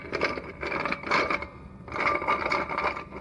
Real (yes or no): yes